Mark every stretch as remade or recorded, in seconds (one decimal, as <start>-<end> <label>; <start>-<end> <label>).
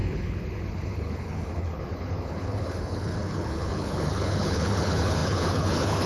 0.0-6.1 remade